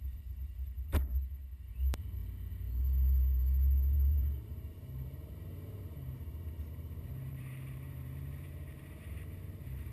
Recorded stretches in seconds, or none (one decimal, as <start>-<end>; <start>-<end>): 2.2-2.8